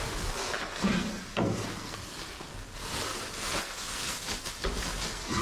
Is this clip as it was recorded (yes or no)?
no